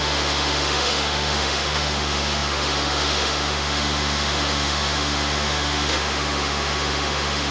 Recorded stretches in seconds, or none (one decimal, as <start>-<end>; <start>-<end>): none